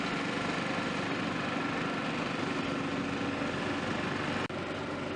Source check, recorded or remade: recorded